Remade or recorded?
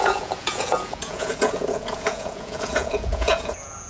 remade